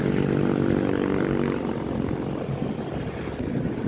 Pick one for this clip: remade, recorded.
recorded